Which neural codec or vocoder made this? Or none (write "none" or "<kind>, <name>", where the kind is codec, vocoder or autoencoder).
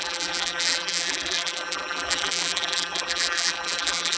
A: vocoder, BigVGAN v2